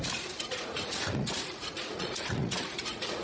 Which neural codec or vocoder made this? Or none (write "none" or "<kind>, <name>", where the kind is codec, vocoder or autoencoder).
vocoder, Vocos